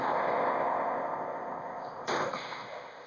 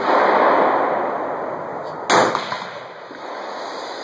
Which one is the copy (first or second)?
first